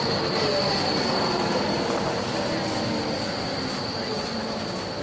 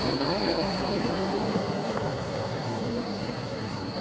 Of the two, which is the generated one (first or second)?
second